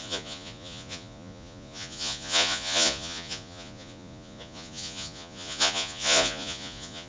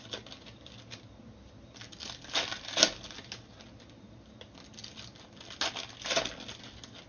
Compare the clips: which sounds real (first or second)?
second